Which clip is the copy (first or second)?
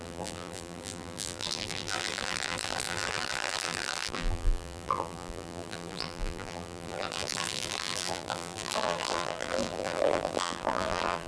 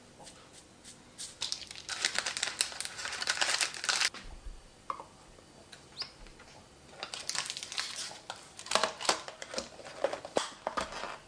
first